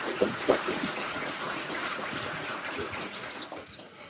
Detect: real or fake fake